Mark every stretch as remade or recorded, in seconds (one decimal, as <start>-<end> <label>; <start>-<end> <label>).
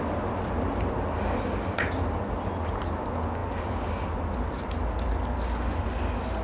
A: 0.0-6.4 recorded